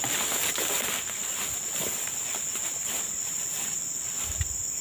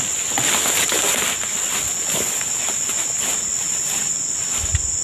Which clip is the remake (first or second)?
first